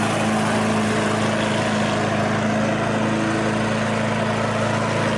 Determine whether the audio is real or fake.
real